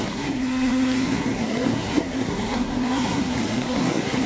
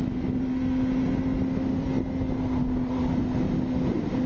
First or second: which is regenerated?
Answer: first